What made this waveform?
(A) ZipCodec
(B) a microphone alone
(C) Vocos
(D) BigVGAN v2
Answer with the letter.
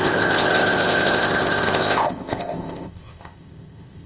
A